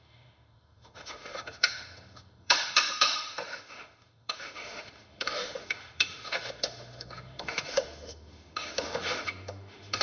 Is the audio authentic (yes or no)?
no